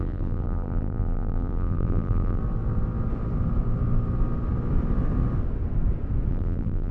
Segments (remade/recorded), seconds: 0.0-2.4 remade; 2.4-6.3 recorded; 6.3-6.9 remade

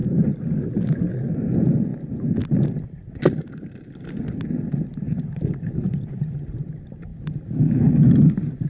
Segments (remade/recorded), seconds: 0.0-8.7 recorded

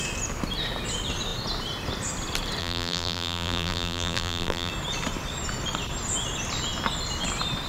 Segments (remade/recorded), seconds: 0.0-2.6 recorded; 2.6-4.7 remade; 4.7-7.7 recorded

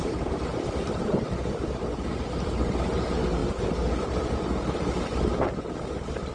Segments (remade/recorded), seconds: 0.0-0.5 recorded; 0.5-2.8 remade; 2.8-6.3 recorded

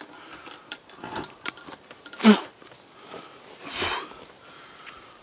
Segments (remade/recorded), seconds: 0.0-0.4 recorded; 0.4-3.5 remade; 3.5-5.2 recorded

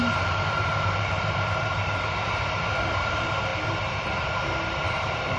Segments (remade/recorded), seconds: 0.0-1.7 remade; 1.7-2.9 recorded; 2.9-3.5 remade; 3.5-4.2 recorded; 4.2-5.4 remade

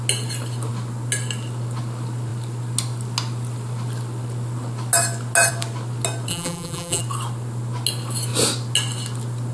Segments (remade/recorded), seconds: 0.0-6.3 recorded; 6.3-7.0 remade; 7.0-9.5 recorded